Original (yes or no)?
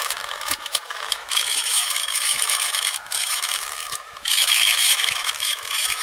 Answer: no